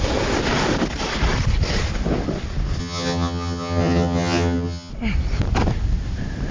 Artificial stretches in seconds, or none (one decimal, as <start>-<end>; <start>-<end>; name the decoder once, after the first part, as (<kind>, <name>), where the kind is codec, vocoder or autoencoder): 2.8-4.9 (vocoder, HiFi-GAN)

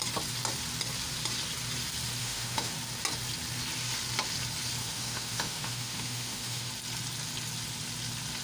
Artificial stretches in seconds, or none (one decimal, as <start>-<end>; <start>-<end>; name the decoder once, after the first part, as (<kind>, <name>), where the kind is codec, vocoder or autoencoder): 2.2-2.7 (autoencoder, DAC-VAE); 4.8-6.7

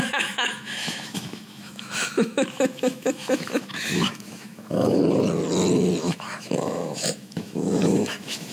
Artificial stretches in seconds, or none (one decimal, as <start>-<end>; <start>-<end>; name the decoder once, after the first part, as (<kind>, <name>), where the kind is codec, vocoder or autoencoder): 0.0-5.0 (autoencoder, DAC-VAE); 6.0-8.5

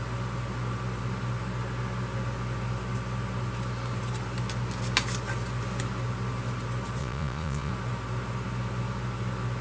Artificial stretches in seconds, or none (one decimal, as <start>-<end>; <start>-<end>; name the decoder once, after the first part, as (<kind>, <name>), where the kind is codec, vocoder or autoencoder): 7.0-7.7 (vocoder, Vocos)

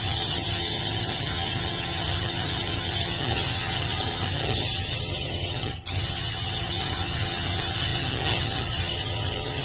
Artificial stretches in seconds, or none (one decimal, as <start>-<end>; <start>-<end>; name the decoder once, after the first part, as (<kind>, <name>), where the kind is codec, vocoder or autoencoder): 0.0-9.6 (vocoder, HiFi-GAN)